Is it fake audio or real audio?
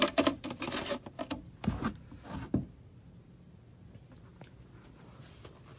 real